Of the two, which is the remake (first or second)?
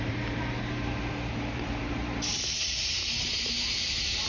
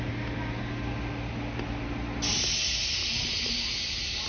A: first